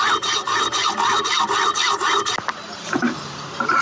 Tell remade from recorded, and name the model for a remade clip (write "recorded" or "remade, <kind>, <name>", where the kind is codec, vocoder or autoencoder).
recorded